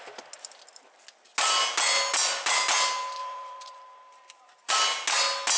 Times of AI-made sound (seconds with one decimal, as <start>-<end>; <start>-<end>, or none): 3.2-4.7